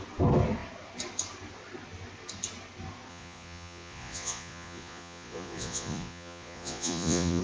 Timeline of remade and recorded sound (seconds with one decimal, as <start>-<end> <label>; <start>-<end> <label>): 0.0-3.1 recorded; 3.1-7.4 remade